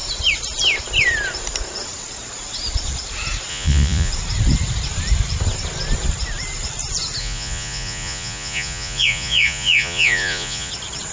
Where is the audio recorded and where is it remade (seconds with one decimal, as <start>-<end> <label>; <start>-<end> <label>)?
0.0-3.5 recorded; 3.5-4.1 remade; 4.1-7.2 recorded; 7.2-10.7 remade; 10.7-11.1 recorded